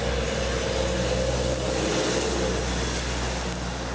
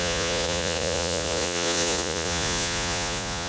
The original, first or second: first